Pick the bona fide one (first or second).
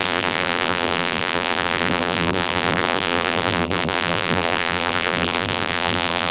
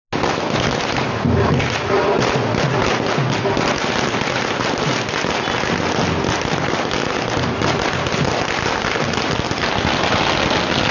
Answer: second